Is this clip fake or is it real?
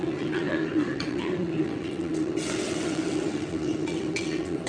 fake